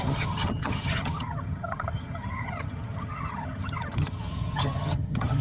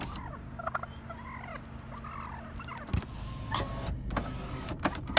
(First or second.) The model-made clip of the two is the first